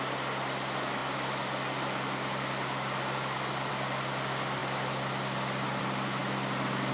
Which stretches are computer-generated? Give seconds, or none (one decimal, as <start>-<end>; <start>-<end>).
none